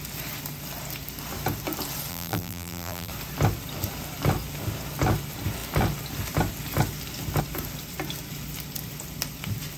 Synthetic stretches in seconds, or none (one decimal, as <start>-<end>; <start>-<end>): 2.1-3.1